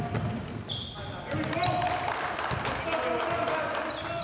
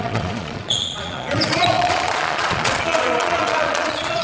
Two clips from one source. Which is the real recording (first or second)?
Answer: first